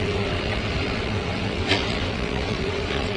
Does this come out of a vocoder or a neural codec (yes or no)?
yes